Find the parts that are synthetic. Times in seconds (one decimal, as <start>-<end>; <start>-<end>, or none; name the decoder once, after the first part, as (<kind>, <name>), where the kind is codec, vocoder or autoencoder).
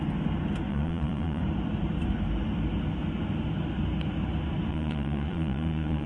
0.7-1.4 (vocoder, Vocos); 4.7-6.1